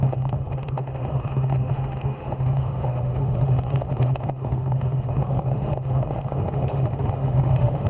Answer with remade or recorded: remade